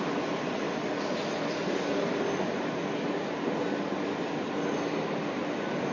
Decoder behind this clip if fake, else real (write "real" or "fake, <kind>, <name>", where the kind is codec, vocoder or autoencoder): real